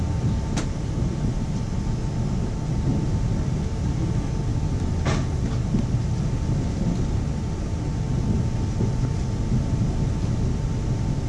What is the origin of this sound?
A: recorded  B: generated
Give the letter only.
A